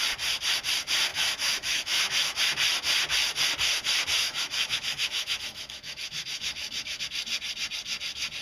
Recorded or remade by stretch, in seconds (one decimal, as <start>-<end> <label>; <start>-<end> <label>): 0.0-1.1 recorded; 1.1-2.4 remade; 2.4-4.2 recorded; 4.2-7.0 remade; 7.0-8.4 recorded